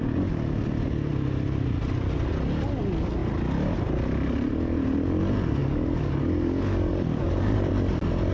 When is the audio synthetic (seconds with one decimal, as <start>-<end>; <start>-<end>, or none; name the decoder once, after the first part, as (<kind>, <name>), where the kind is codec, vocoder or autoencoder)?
5.6-7.7 (codec, DAC)